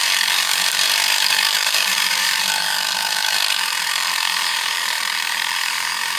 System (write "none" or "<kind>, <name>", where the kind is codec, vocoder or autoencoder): codec, DAC